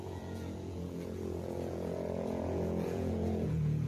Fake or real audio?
fake